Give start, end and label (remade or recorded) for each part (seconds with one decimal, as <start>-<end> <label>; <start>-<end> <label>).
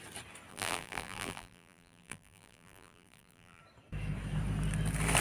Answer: 0.0-0.5 recorded; 0.5-3.6 remade; 3.6-5.2 recorded